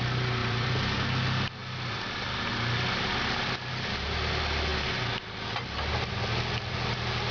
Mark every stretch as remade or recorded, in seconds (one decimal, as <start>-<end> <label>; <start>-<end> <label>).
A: 0.0-0.4 recorded; 0.4-1.0 remade; 1.0-1.6 recorded; 1.6-3.7 remade; 3.7-7.3 recorded